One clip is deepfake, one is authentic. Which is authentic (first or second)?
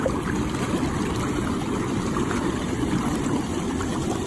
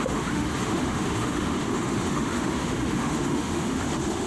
first